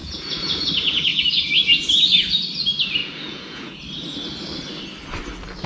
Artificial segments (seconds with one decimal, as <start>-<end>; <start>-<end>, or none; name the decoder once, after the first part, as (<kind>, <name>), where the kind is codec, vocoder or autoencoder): 0.0-0.7 (vocoder, Vocos); 3.0-3.8